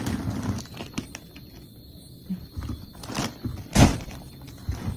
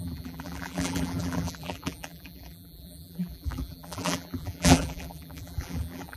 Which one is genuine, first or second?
first